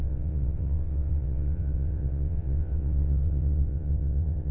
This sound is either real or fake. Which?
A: fake